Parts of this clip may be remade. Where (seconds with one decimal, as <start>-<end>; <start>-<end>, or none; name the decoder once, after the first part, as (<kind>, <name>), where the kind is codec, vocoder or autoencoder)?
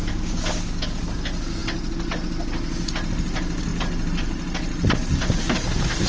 none